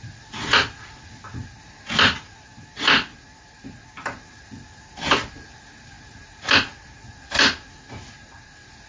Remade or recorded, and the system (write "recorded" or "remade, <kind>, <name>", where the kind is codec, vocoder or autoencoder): recorded